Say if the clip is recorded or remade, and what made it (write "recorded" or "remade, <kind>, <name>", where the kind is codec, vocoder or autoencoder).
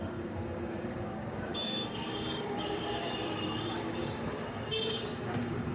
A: remade, codec, DAC